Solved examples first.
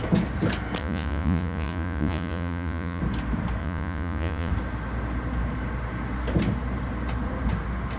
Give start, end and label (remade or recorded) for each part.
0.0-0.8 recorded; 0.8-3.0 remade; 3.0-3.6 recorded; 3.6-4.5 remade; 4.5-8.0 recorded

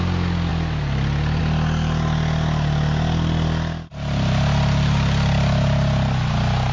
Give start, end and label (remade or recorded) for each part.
0.0-6.7 recorded